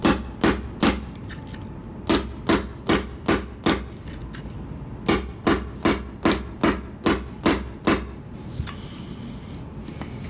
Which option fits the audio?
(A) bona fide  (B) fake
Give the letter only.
A